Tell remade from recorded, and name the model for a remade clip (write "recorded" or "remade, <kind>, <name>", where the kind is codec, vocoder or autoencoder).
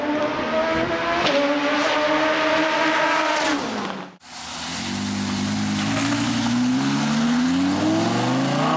recorded